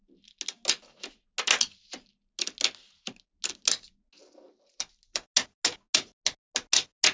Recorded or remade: recorded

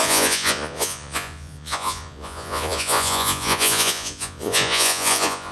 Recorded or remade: remade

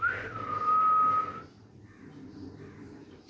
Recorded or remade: recorded